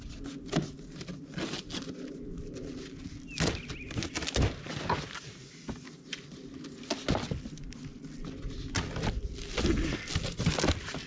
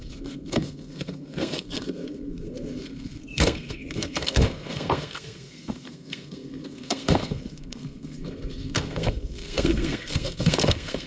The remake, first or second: second